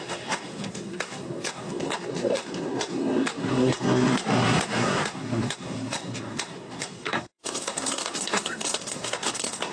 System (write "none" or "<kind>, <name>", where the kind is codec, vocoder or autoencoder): codec, SNAC